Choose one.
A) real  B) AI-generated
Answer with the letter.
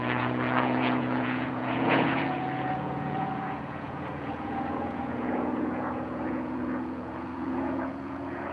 B